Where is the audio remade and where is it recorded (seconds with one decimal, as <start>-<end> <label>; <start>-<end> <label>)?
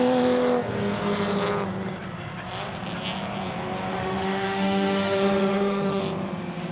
0.0-4.0 recorded; 4.0-6.0 remade; 6.0-6.7 recorded